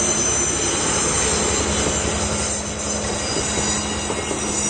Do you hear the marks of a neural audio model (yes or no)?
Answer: no